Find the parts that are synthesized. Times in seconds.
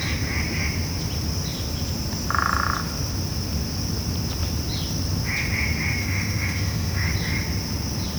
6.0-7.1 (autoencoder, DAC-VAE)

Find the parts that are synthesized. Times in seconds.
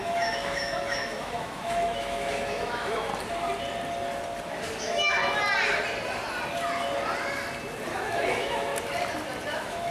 0.0-3.1 (autoencoder, DAC-VAE); 4.8-5.2; 7.9-8.7; 9.5-9.9